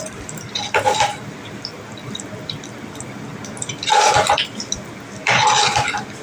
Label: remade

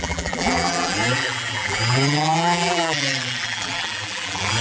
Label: remade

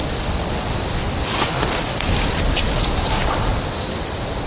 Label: remade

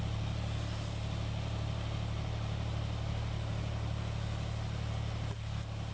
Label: recorded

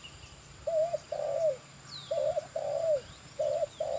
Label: remade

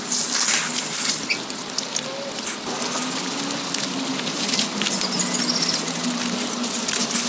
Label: recorded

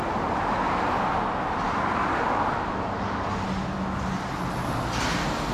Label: recorded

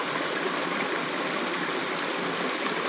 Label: recorded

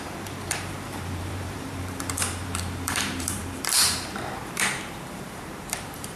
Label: remade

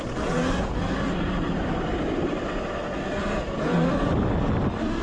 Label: recorded